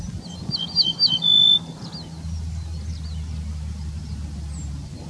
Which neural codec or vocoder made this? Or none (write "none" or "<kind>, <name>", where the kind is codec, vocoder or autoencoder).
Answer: none